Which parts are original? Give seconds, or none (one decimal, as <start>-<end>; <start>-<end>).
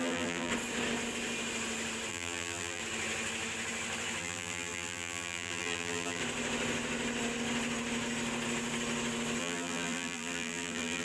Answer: 0.5-2.1; 2.8-4.2; 6.2-9.4